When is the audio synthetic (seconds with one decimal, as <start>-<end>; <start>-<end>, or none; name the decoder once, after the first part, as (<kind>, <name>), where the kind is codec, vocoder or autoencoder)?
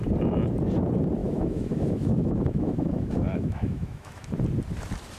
1.2-4.3 (autoencoder, DAC-VAE)